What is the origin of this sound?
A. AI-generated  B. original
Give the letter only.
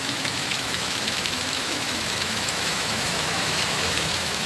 A